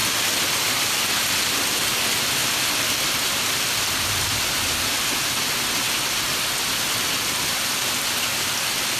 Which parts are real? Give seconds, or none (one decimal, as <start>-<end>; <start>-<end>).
0.0-9.0